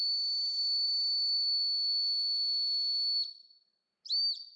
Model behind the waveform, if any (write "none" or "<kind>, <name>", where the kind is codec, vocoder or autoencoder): none